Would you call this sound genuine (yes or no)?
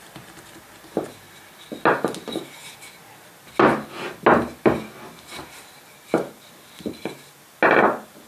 yes